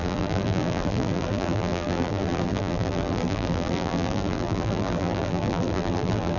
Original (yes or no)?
no